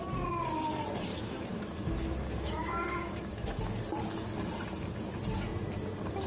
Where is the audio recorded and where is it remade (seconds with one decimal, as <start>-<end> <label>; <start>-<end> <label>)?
0.0-1.1 recorded; 1.1-3.6 remade; 3.6-6.3 recorded